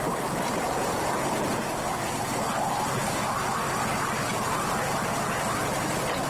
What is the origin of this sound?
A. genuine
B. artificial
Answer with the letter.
A